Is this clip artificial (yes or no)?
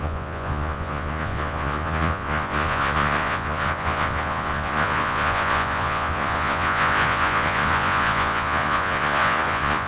yes